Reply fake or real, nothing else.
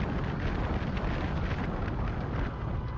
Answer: real